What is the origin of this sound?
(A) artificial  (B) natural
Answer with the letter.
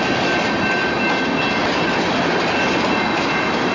B